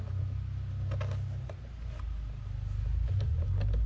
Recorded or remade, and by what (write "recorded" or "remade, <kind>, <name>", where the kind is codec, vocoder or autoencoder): recorded